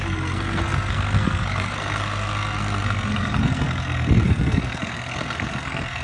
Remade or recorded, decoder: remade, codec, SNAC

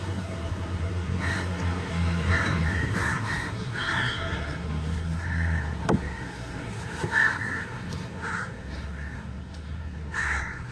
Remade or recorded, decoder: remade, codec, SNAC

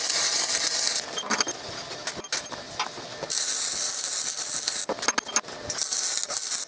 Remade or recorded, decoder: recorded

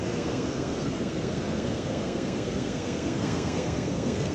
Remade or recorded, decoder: remade, codec, SNAC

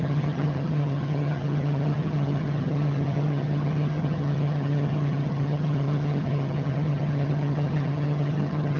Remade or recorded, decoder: remade, vocoder, HiFi-GAN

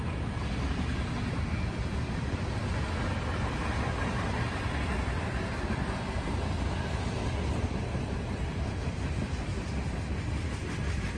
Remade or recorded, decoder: recorded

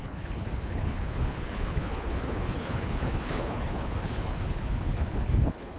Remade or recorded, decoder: remade, codec, HILCodec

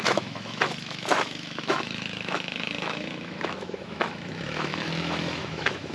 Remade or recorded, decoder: remade, autoencoder, DAC-VAE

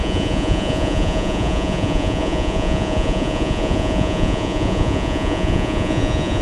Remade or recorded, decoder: remade, vocoder, Vocos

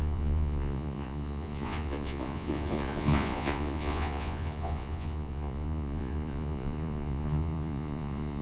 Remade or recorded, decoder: remade, vocoder, Vocos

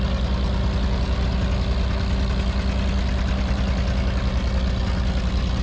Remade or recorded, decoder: recorded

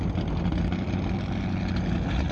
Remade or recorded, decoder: recorded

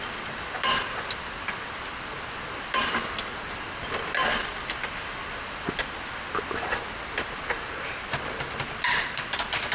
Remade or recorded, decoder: recorded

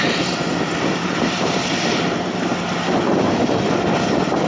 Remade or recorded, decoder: remade, vocoder, BigVGAN v2